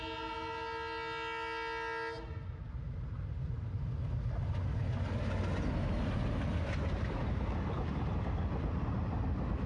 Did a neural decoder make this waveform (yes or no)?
no